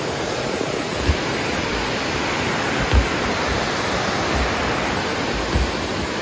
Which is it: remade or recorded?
recorded